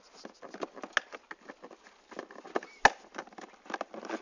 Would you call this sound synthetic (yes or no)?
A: no